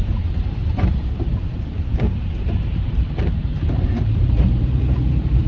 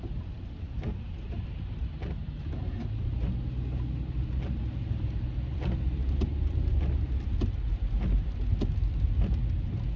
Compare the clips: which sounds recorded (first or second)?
second